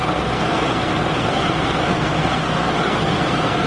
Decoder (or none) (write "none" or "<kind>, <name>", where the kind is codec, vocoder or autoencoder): codec, SNAC